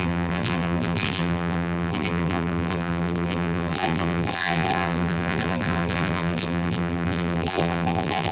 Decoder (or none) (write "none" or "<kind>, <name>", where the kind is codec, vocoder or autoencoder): vocoder, BigVGAN v2